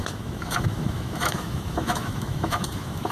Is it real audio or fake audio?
fake